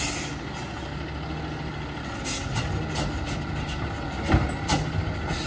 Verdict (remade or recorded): recorded